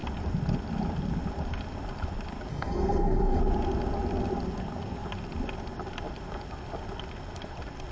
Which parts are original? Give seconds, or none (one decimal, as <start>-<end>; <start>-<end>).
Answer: 0.0-2.5; 3.4-7.9